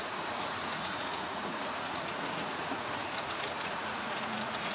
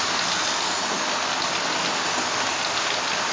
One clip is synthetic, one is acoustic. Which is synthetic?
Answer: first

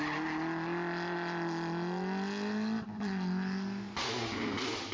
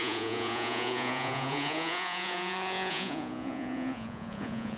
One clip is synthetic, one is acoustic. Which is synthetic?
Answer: second